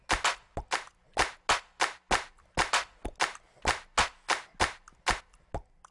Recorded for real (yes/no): yes